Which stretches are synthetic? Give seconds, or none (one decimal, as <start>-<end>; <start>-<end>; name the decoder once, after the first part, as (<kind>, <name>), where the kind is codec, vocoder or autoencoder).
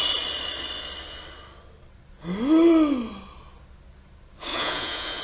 4.5-5.2 (vocoder, Vocos)